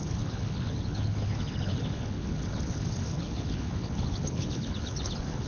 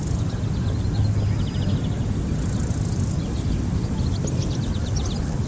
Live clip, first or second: second